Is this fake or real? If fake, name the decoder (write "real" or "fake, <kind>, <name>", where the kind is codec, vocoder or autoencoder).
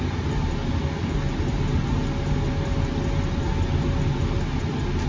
real